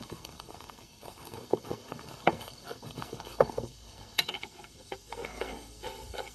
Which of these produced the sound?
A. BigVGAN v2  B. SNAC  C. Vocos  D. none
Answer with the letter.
B